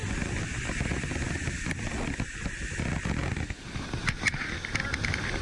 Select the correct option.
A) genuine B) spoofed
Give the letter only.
A